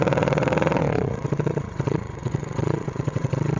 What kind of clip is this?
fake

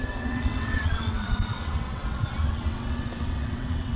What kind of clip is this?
fake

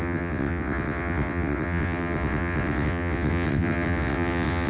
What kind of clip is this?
fake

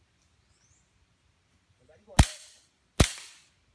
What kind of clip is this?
real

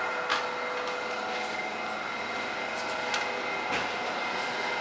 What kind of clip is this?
real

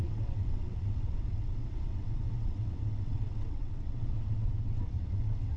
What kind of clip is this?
fake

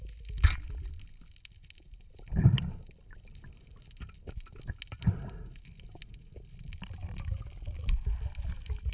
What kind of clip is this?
real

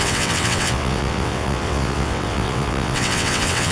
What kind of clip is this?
fake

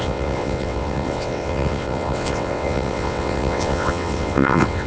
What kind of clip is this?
fake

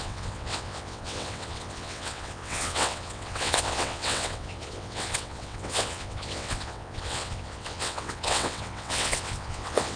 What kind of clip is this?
fake